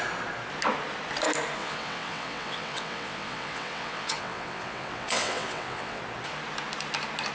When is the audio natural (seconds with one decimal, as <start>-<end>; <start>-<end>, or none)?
0.0-1.6; 6.0-7.3